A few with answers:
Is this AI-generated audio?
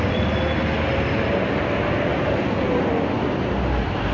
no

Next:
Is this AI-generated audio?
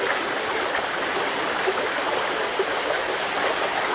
no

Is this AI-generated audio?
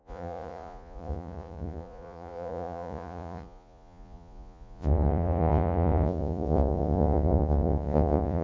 yes